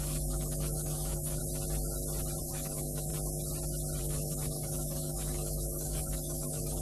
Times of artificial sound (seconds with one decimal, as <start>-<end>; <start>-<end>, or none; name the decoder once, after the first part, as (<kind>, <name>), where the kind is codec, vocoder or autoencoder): 0.0-1.4 (codec, DAC); 2.4-3.1; 4.0-6.8